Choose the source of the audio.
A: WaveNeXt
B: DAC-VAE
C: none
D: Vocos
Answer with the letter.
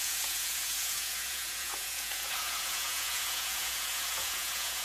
D